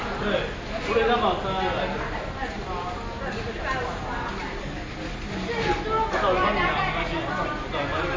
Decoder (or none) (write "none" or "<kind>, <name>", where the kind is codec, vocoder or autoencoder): none